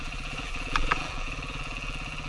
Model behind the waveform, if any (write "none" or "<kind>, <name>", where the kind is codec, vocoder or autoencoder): vocoder, BigVGAN v2